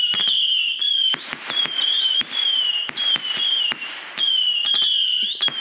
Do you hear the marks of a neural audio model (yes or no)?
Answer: yes